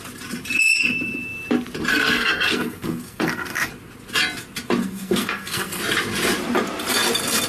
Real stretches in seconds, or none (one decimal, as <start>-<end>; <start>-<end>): 0.0-1.9; 3.7-4.8; 5.8-7.5